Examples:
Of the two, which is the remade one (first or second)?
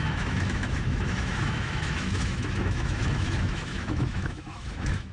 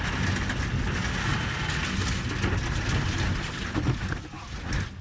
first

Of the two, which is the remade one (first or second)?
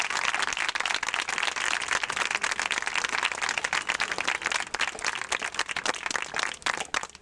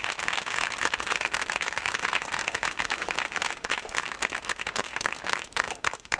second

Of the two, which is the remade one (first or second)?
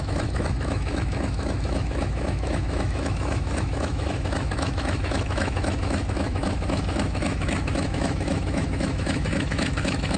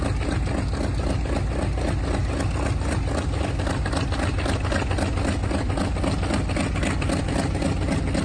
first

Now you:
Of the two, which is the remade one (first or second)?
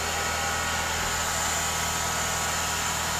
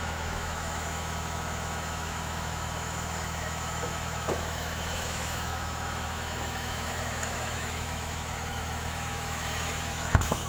second